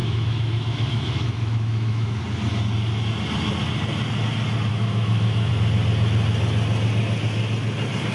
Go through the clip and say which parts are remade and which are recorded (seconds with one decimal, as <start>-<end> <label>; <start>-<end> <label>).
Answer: 0.0-2.2 remade; 2.2-4.7 recorded; 4.7-5.5 remade; 5.5-8.1 recorded